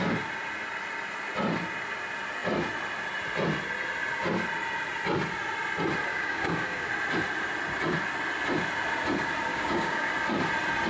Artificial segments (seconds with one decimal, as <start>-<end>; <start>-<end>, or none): 6.1-6.9; 9.5-10.1